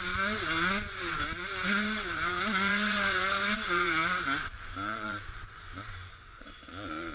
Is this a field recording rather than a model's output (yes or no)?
no